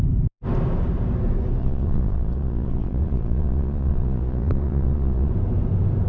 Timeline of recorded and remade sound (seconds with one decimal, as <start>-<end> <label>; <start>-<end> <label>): 0.0-1.6 recorded; 1.6-5.3 remade; 5.3-6.1 recorded